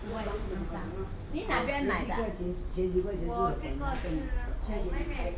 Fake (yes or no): no